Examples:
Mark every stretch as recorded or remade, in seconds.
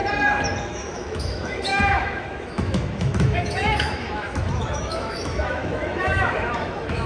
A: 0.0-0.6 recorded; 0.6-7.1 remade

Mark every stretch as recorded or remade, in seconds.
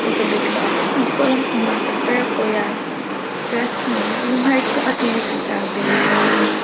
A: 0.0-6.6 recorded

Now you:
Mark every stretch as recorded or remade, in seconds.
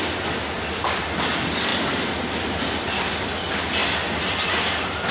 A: 0.0-1.7 recorded; 1.7-3.3 remade; 3.3-3.8 recorded; 3.8-4.4 remade; 4.4-5.1 recorded